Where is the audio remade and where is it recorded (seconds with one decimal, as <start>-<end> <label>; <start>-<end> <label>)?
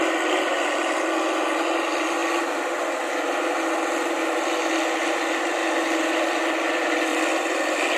0.0-7.1 recorded; 7.1-8.0 remade